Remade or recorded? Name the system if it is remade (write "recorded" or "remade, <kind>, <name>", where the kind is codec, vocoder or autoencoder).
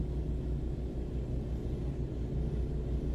recorded